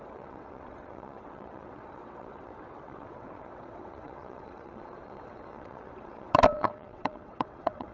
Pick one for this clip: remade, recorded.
remade